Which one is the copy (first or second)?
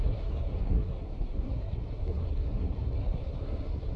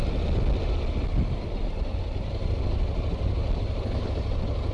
first